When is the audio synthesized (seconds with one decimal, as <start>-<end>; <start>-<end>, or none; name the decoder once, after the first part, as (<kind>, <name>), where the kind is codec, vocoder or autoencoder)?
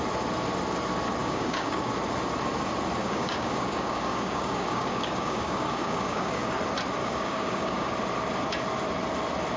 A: 1.2-1.9 (codec, DAC); 3.0-6.5; 7.0-7.9